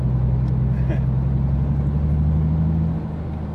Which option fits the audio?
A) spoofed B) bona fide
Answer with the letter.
B